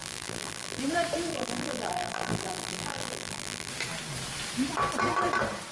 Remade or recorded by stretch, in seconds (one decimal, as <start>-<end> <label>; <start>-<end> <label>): 0.0-0.8 remade; 0.8-1.3 recorded; 1.3-3.7 remade; 3.7-5.7 recorded

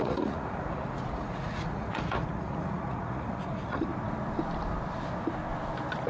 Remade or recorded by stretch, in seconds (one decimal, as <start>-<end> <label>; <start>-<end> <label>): 0.0-3.9 remade; 3.9-6.1 recorded

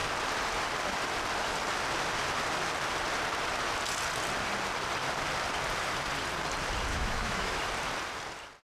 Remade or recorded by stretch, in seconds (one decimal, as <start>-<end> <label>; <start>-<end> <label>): 0.0-6.9 recorded; 6.9-7.6 remade; 7.6-8.7 recorded

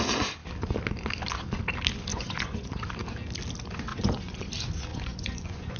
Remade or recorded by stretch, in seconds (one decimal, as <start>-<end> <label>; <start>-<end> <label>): 0.0-2.1 recorded; 2.1-2.8 remade; 2.8-3.9 recorded; 3.9-4.5 remade; 4.5-4.9 recorded; 4.9-5.8 remade